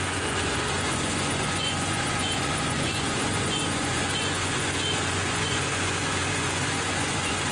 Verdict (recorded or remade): remade